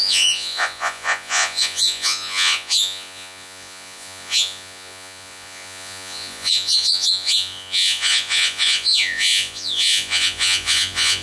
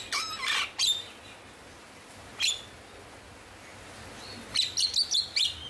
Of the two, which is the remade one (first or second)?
first